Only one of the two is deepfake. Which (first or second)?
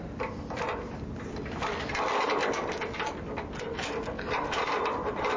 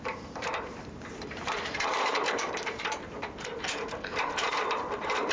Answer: second